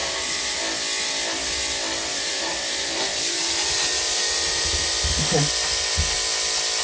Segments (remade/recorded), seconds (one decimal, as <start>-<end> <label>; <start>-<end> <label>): 0.0-0.6 remade; 0.6-2.1 recorded; 2.1-4.9 remade; 4.9-6.8 recorded